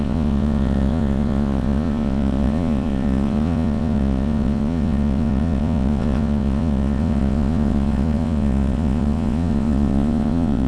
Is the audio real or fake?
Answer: fake